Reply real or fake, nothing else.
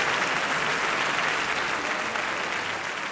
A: real